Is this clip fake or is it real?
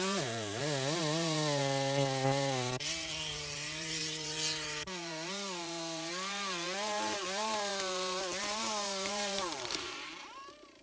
fake